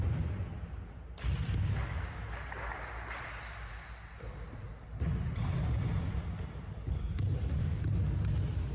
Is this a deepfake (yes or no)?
no